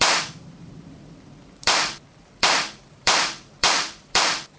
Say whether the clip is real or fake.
fake